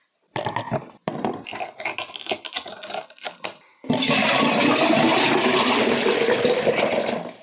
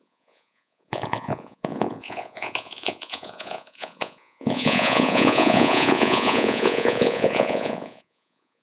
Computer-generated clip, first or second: second